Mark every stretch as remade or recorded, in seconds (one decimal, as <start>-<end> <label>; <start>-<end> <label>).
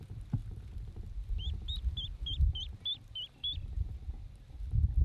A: 0.0-5.0 recorded